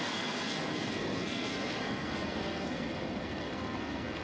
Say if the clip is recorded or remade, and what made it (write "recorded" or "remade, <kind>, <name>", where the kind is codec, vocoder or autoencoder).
remade, codec, SNAC